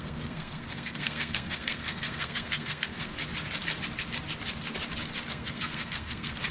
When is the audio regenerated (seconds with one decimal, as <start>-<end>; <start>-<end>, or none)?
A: 0.0-3.1; 5.3-6.5